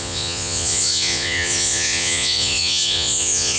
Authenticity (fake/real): fake